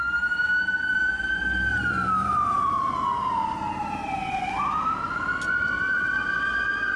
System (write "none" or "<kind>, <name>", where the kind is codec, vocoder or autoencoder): vocoder, BigVGAN v2